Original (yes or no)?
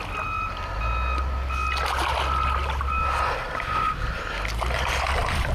yes